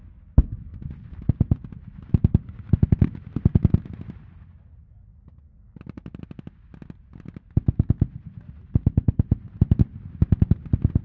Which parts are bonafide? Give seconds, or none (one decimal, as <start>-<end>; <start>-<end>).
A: 2.1-5.1; 9.6-11.0